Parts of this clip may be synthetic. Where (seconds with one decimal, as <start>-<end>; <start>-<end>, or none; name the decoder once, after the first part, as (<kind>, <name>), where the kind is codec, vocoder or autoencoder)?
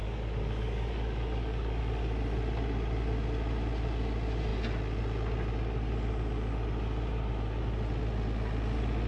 0.0-1.8 (codec, DAC)